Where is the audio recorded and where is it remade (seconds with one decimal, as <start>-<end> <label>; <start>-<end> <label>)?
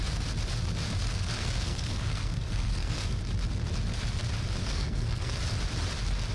0.0-1.0 recorded; 1.0-3.2 remade; 3.2-4.6 recorded; 4.6-5.4 remade; 5.4-6.3 recorded